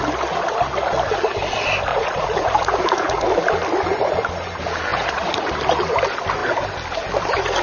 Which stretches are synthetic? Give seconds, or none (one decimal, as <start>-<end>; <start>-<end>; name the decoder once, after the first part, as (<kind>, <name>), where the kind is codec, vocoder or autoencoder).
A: 1.9-3.3 (vocoder, Vocos); 4.9-5.5